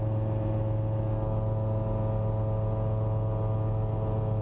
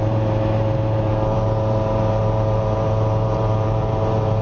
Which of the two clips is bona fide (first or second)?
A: first